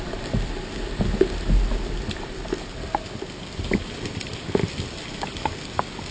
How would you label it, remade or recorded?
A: recorded